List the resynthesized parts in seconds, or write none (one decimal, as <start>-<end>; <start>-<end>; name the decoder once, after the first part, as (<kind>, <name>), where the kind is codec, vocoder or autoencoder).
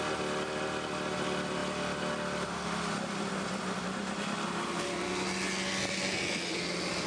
none